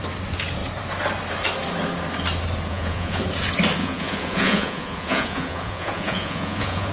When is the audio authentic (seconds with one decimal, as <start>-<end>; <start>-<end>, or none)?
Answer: 0.0-2.7; 3.2-3.8